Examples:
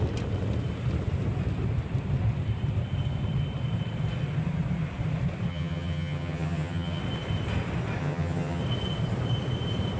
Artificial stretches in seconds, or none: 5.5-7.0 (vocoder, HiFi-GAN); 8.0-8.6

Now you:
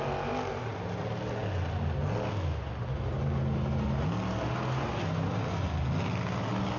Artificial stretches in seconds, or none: none

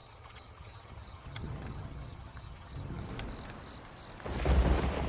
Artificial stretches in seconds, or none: 0.0-3.1 (vocoder, HiFi-GAN)

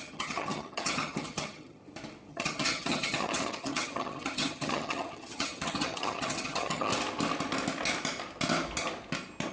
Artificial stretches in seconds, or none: 0.0-1.8 (vocoder, HiFi-GAN); 2.3-6.9

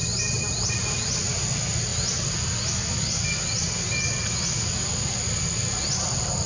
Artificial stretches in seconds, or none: none

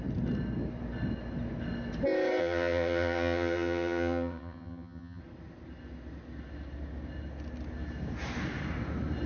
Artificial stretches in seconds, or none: 2.4-5.2 (vocoder, HiFi-GAN)